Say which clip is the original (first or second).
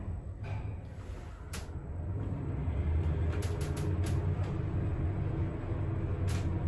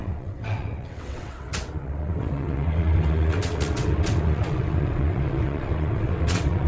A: first